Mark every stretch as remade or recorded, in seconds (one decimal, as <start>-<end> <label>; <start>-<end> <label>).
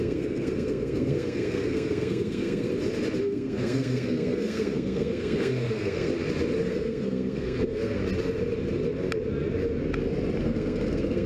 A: 0.0-2.7 remade; 2.7-3.2 recorded; 3.2-6.1 remade; 6.1-6.6 recorded; 6.6-8.0 remade; 8.0-10.4 recorded; 10.4-11.3 remade